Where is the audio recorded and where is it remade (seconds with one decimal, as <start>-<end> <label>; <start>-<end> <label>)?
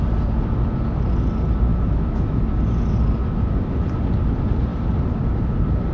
0.0-1.7 recorded; 1.7-2.5 remade; 2.5-5.9 recorded